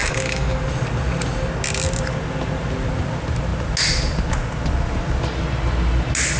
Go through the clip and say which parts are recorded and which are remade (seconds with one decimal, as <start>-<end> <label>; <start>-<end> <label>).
0.0-0.6 remade; 0.6-6.4 recorded